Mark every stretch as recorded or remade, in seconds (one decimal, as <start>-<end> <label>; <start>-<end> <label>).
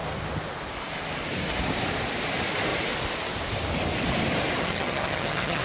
0.0-4.6 recorded; 4.6-5.6 remade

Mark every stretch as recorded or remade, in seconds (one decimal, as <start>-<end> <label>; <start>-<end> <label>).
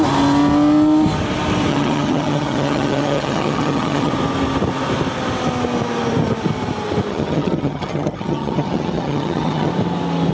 0.0-1.7 recorded; 1.7-4.1 remade; 4.1-7.1 recorded; 7.1-9.7 remade; 9.7-10.3 recorded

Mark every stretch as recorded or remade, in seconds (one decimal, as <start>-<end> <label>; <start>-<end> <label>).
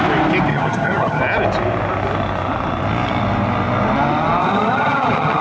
0.0-0.5 recorded; 0.5-1.2 remade; 1.2-4.4 recorded; 4.4-5.4 remade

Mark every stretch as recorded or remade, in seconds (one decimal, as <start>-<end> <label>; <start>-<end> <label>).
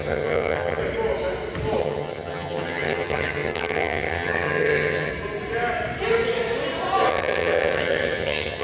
0.0-0.8 remade; 0.8-1.8 recorded; 1.8-5.1 remade; 5.1-7.1 recorded; 7.1-8.6 remade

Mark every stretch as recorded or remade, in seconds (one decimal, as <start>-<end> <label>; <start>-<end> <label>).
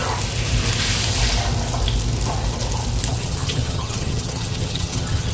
0.0-3.1 recorded; 3.1-5.3 remade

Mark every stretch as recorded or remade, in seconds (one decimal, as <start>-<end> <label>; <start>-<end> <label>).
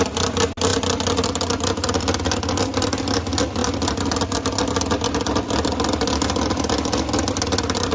0.0-7.9 recorded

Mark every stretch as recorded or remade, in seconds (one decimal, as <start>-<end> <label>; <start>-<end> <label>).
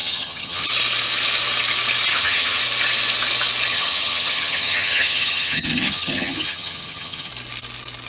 0.0-0.7 remade; 0.7-2.1 recorded; 2.1-2.6 remade; 2.6-3.7 recorded; 3.7-7.3 remade; 7.3-8.1 recorded